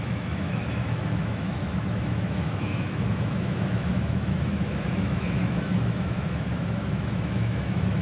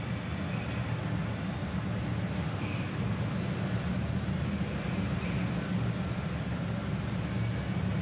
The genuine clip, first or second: second